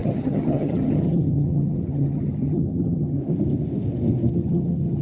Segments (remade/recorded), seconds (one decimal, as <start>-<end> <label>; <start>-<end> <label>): 0.0-3.2 remade; 3.2-4.3 recorded; 4.3-5.0 remade